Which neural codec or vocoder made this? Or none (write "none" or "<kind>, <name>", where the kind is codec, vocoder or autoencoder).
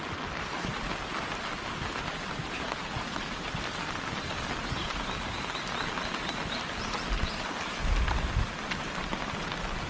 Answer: none